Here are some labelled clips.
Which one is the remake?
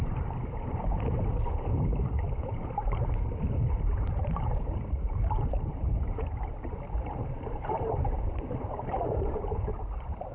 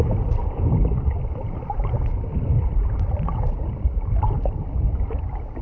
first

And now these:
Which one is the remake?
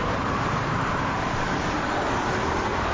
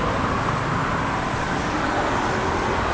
first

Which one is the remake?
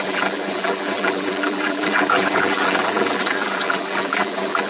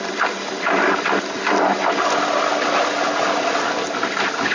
first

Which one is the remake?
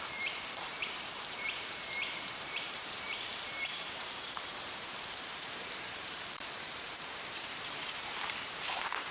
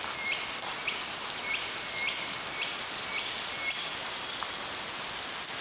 first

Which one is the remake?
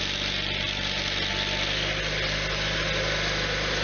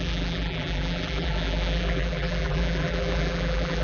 second